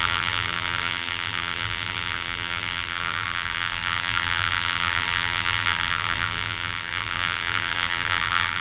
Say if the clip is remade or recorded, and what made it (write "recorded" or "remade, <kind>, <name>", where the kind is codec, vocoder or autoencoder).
remade, vocoder, BigVGAN v2